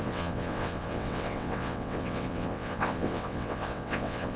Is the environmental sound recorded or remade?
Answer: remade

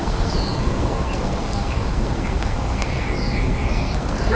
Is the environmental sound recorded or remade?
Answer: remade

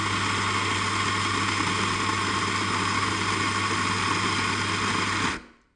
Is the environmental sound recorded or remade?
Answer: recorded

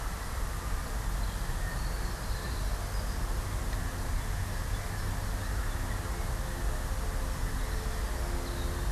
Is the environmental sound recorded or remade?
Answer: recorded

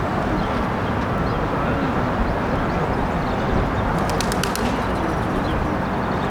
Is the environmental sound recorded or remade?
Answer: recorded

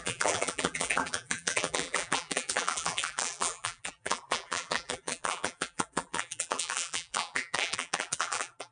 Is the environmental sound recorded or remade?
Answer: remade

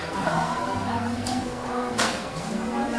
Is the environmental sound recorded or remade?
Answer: remade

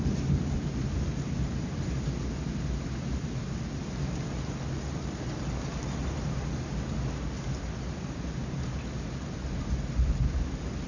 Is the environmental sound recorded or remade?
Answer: recorded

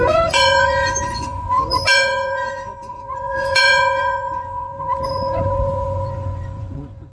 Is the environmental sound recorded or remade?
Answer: remade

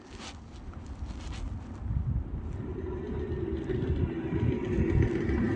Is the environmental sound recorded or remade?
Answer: recorded